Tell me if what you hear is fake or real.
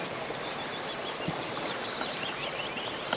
fake